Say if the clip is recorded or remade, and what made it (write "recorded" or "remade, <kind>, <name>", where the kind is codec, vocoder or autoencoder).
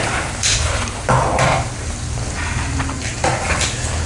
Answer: recorded